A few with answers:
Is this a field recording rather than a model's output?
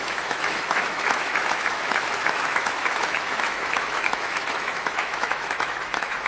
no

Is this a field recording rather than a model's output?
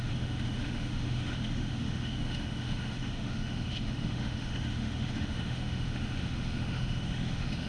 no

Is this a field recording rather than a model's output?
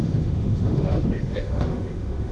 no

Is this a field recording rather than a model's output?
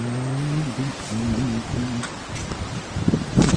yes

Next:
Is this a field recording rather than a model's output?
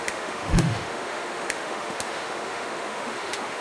no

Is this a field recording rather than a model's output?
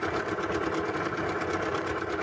yes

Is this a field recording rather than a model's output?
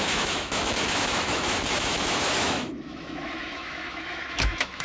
no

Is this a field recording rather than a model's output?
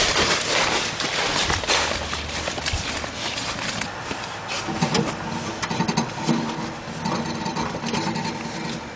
yes